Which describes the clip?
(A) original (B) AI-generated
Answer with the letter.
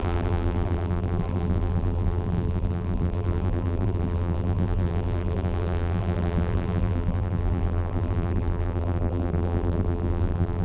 B